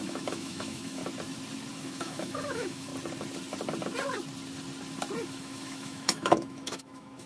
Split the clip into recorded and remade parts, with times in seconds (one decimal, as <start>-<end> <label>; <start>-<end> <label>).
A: 0.0-1.0 remade; 1.0-1.7 recorded; 1.7-2.9 remade; 2.9-5.3 recorded; 5.3-7.3 remade